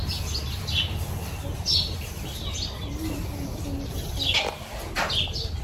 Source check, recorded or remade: recorded